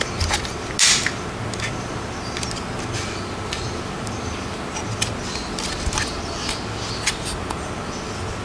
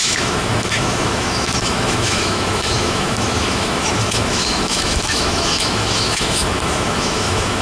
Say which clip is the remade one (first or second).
second